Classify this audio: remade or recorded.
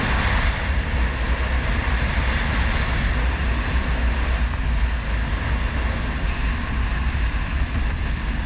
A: recorded